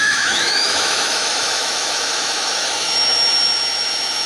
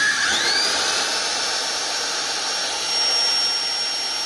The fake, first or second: first